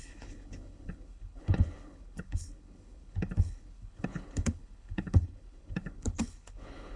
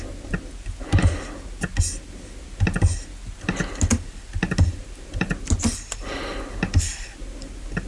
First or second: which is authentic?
second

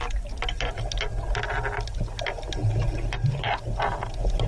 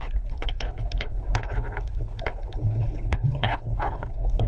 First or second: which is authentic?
first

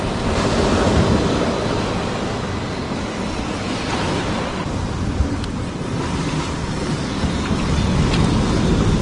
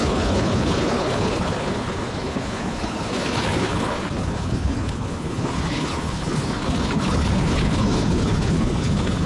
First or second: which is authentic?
first